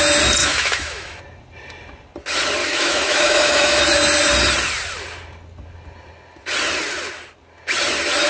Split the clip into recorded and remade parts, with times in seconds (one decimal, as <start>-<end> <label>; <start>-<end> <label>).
0.0-0.4 recorded; 0.4-1.2 remade; 1.2-2.6 recorded; 2.6-3.8 remade; 3.8-8.3 recorded